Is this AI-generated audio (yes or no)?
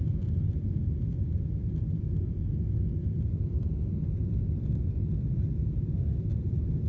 yes